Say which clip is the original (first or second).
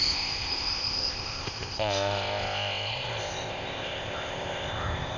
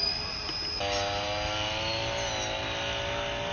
second